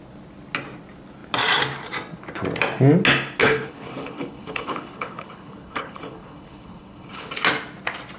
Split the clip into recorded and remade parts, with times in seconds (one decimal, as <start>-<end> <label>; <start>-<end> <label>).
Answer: 0.0-3.4 recorded; 3.4-7.3 remade; 7.3-8.2 recorded

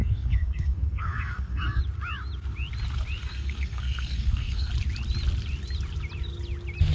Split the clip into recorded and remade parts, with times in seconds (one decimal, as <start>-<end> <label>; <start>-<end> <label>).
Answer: 0.0-1.8 remade; 1.8-3.2 recorded; 3.2-4.7 remade; 4.7-6.9 recorded

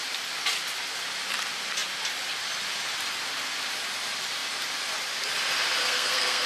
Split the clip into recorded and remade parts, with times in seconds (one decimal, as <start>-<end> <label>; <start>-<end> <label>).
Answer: 0.0-5.8 recorded; 5.8-6.5 remade

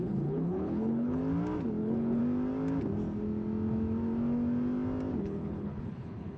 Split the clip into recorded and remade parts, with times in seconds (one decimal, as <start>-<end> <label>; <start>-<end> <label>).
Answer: 0.0-1.2 remade; 1.2-1.8 recorded; 1.8-2.2 remade; 2.2-5.2 recorded; 5.2-6.4 remade